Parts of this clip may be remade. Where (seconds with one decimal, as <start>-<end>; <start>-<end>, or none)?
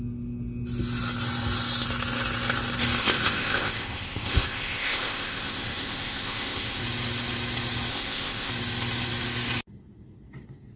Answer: 3.0-6.8; 7.9-8.5